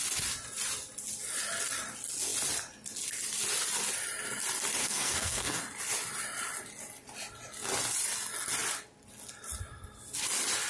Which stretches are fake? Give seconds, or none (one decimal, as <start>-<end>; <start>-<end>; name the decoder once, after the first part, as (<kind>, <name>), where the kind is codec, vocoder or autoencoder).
4.8-5.6 (codec, SNAC)